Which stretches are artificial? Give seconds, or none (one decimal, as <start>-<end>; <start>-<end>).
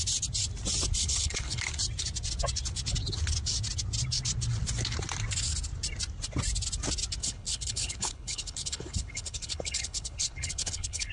1.0-1.6; 7.2-11.1